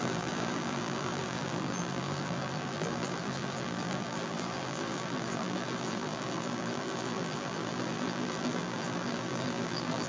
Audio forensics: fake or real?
fake